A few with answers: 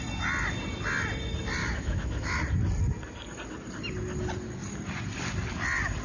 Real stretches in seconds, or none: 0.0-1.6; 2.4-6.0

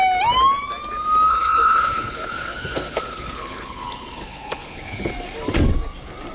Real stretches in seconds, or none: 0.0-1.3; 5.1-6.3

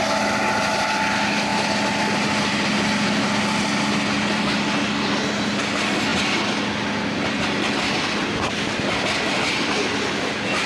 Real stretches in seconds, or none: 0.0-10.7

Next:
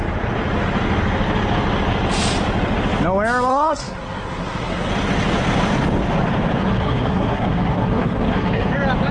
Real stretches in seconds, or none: 0.0-3.5; 4.9-6.6; 8.7-9.1

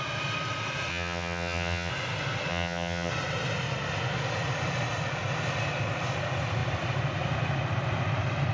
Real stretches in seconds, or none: 0.0-0.9; 1.9-2.5; 3.1-8.5

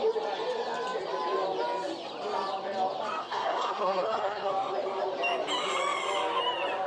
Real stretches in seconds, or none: 0.0-3.2; 4.5-6.9